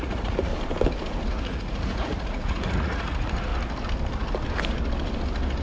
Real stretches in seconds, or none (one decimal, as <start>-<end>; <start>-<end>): 0.5-1.3; 3.5-5.6